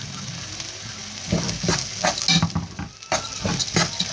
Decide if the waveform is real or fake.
real